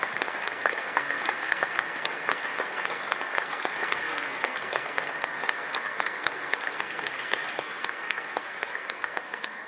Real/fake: fake